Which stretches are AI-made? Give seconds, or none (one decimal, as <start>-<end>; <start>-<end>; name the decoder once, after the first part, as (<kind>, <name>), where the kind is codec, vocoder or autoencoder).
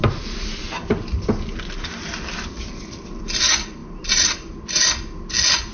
0.0-3.4 (vocoder, BigVGAN v2); 3.8-4.6